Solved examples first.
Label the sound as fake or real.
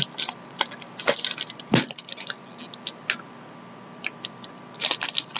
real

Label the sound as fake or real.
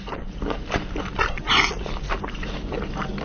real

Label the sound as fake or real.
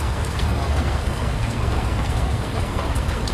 fake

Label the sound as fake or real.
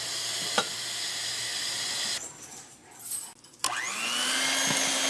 real